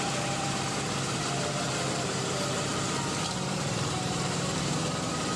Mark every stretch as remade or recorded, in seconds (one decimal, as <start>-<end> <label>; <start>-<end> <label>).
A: 0.0-5.4 remade